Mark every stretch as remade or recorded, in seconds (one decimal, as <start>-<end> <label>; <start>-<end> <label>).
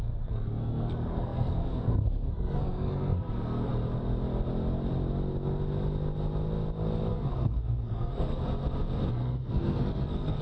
0.0-3.7 remade; 3.7-7.1 recorded; 7.1-8.4 remade; 8.4-9.1 recorded; 9.1-10.4 remade